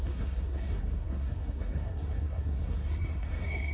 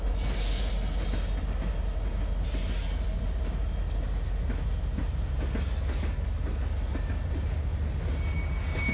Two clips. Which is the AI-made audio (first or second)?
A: first